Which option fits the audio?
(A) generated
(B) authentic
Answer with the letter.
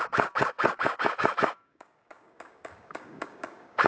A